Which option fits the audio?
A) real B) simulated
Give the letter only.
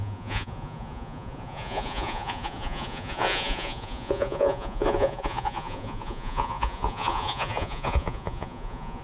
B